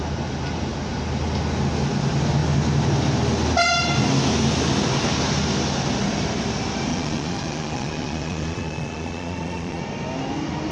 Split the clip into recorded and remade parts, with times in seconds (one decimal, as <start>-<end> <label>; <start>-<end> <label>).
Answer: 0.0-6.9 recorded; 6.9-9.8 remade; 9.8-10.7 recorded